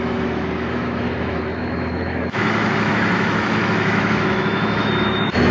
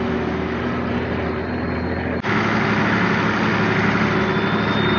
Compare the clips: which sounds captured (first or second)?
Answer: second